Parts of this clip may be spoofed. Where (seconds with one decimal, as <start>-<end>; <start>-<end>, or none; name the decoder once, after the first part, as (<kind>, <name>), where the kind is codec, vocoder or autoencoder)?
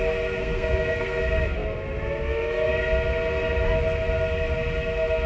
0.4-1.2 (codec, SNAC)